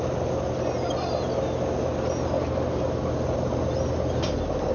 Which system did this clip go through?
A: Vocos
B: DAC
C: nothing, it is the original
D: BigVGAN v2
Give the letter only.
C